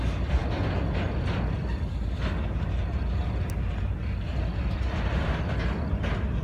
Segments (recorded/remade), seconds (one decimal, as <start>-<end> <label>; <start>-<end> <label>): 0.0-6.4 recorded